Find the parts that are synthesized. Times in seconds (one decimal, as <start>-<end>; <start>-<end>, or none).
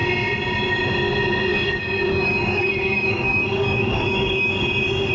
1.5-4.6